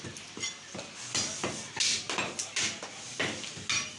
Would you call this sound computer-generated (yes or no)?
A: no